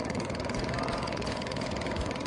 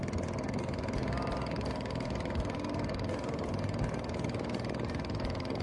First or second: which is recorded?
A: second